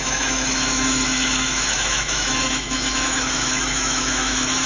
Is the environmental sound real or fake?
fake